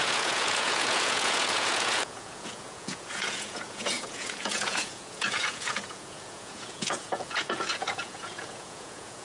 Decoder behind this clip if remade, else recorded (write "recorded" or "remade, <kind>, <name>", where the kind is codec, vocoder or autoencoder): remade, vocoder, Vocos